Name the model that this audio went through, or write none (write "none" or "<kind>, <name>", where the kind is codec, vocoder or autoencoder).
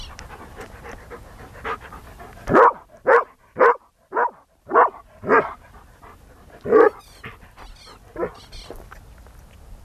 none